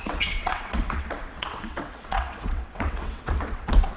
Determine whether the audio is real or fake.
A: fake